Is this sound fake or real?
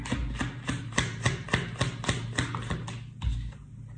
real